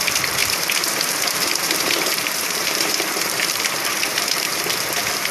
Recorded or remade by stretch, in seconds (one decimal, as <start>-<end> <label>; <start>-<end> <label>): 0.0-0.4 recorded; 0.4-3.6 remade; 3.6-4.1 recorded; 4.1-5.3 remade